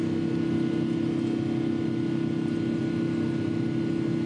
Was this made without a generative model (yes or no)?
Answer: yes